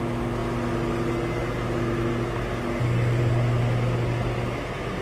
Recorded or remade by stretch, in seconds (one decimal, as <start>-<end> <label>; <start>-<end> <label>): 0.0-5.0 recorded